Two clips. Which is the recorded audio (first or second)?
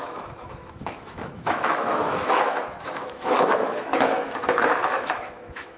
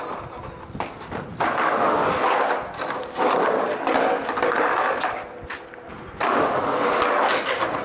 second